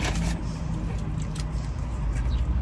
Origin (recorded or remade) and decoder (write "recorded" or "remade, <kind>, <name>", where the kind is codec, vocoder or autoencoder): recorded